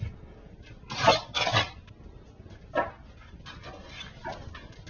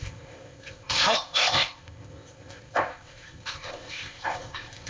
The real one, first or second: first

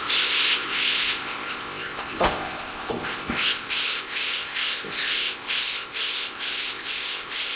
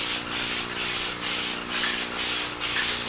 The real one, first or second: second